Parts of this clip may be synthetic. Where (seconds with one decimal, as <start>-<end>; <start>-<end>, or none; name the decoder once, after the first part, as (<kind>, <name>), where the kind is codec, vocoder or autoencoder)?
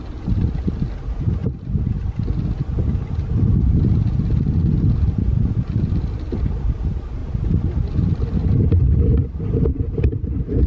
none